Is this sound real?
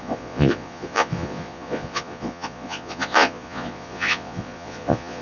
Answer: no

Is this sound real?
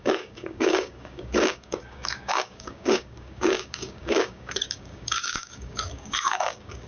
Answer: no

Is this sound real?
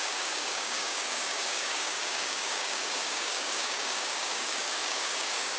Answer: no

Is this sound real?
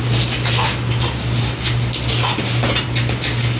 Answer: yes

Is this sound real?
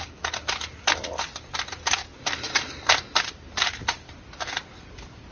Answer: yes